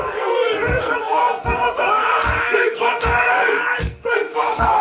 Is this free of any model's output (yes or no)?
no